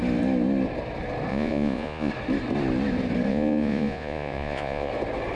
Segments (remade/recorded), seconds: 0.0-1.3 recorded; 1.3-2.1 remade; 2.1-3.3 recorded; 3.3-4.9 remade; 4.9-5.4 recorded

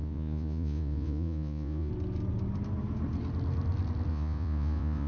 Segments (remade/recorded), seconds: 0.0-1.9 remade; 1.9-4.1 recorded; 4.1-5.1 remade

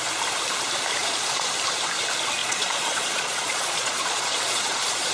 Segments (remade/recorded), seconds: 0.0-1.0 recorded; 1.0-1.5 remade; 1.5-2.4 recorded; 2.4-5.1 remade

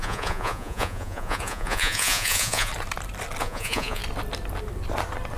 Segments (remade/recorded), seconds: 0.0-2.7 remade; 2.7-3.4 recorded; 3.4-4.0 remade; 4.0-5.4 recorded